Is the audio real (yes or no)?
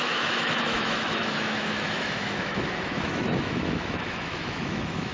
no